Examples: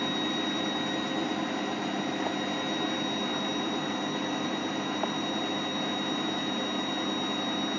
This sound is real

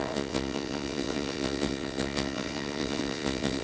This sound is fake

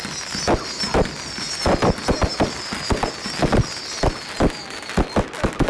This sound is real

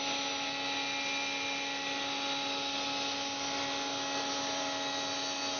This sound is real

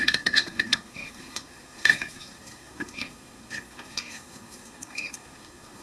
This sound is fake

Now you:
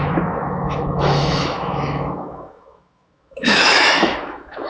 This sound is fake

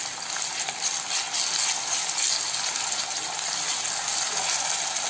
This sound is real